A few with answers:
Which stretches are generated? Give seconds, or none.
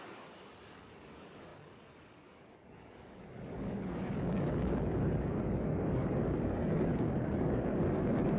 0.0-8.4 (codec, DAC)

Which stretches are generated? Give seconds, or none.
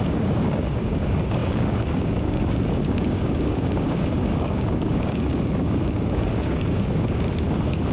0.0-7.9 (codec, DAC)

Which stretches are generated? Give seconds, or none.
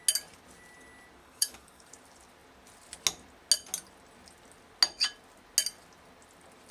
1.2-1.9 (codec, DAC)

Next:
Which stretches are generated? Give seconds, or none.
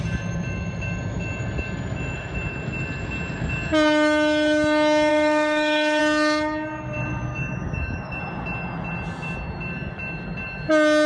5.1-6.0 (codec, DAC); 7.3-8.2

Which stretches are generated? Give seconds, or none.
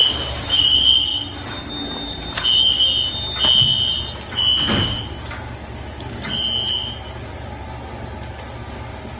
none